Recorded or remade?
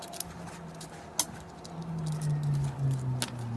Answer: recorded